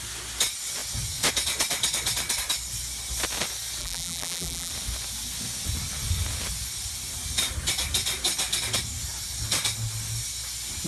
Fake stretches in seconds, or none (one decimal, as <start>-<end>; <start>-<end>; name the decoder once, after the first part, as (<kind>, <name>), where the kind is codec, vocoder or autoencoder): 3.8-4.7 (vocoder, BigVGAN v2)